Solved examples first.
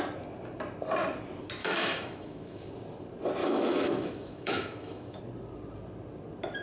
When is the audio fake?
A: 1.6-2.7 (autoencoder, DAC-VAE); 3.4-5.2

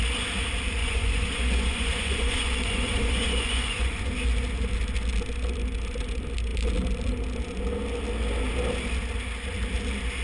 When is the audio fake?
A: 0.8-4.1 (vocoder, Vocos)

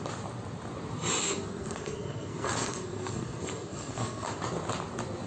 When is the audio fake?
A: 1.2-4.4 (codec, SNAC)

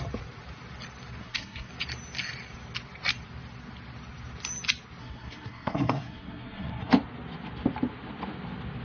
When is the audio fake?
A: 1.2-1.7 (codec, SNAC); 5.0-6.9

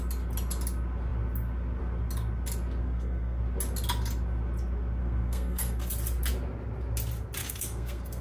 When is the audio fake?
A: 2.8-3.4 (codec, SNAC); 5.0-5.9; 7.4-8.2

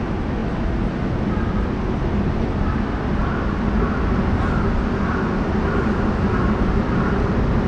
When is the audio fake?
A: none

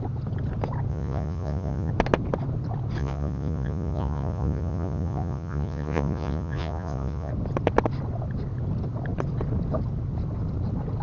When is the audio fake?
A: 0.9-1.9 (vocoder, Vocos); 3.0-7.3

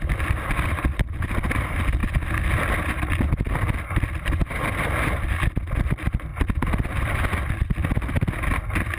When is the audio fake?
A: 0.0-2.0 (vocoder, BigVGAN v2); 3.8-6.3; 7.1-9.0